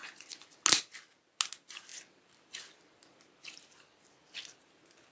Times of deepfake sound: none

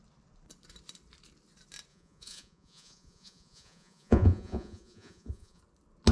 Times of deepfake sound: 1.9-5.6 (vocoder, Vocos)

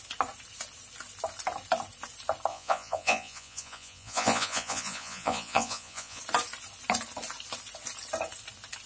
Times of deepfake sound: 2.5-6.2 (vocoder, Vocos)

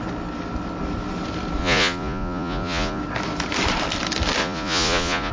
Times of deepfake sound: 1.6-3.0 (vocoder, Vocos); 4.4-5.3

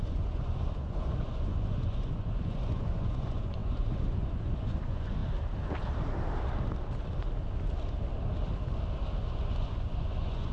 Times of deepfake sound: 0.0-5.2 (vocoder, Vocos); 9.4-10.5

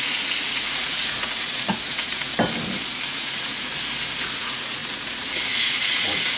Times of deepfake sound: 0.0-2.3 (vocoder, Vocos); 3.1-3.7; 4.3-6.4

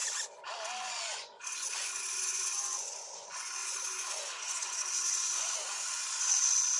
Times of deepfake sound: 0.8-6.0 (vocoder, Vocos)

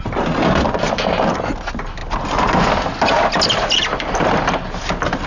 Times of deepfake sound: none